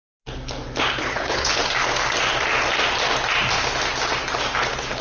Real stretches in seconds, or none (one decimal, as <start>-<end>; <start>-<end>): 0.0-0.8; 1.6-4.6